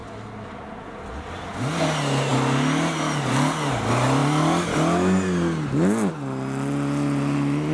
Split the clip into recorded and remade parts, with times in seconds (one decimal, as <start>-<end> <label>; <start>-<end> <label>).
0.0-7.7 recorded